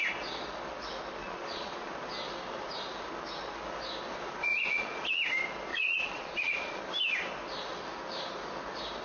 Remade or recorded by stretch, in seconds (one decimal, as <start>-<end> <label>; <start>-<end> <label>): 0.0-1.2 recorded; 1.2-1.9 remade; 1.9-4.4 recorded; 4.4-5.1 remade; 5.1-5.7 recorded; 5.7-6.8 remade; 6.8-9.0 recorded